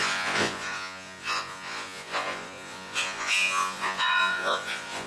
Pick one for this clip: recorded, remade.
remade